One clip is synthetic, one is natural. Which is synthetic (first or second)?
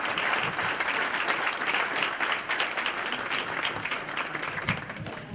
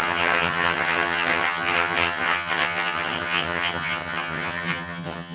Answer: second